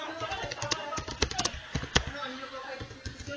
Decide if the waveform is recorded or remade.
recorded